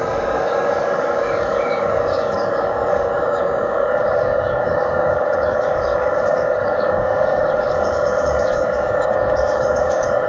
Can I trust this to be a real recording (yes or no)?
no